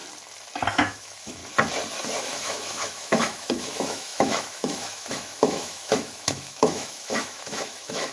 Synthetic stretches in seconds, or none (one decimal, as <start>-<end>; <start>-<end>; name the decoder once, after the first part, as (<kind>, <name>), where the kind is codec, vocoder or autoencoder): 0.7-1.4 (autoencoder, DAC-VAE); 2.2-8.1